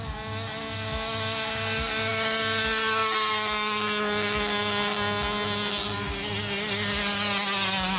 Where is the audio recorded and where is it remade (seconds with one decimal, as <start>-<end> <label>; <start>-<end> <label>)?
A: 0.0-8.0 recorded